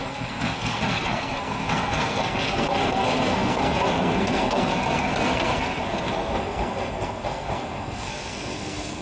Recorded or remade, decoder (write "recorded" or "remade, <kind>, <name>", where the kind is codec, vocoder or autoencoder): remade, codec, SNAC